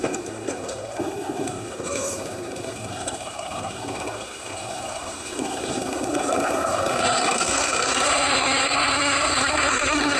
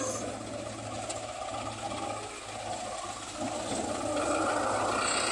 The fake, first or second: first